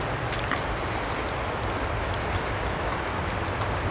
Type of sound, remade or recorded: recorded